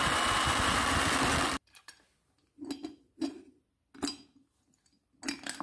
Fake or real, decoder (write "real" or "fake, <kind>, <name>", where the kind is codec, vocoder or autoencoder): real